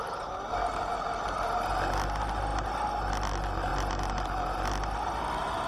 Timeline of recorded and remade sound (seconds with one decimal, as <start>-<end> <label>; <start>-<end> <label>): 0.0-5.7 recorded